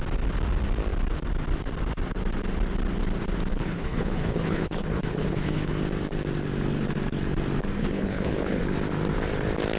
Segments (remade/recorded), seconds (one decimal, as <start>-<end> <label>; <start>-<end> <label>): 0.0-3.5 recorded; 3.5-5.7 remade; 5.7-7.8 recorded; 7.8-8.6 remade; 8.6-9.8 recorded